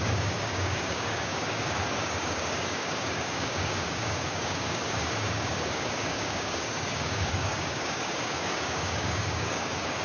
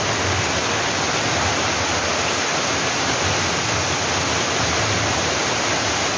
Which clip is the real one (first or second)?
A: second